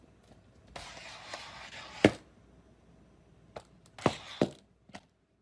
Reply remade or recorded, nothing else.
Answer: recorded